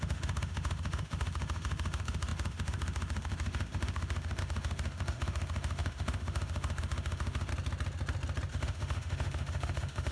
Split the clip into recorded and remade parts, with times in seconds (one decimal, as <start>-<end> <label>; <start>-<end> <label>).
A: 0.0-7.5 remade; 7.5-8.5 recorded; 8.5-10.1 remade